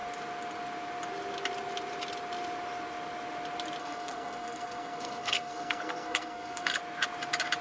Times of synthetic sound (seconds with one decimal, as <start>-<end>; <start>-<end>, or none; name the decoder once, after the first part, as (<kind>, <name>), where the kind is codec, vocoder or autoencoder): 3.8-6.8 (codec, SNAC)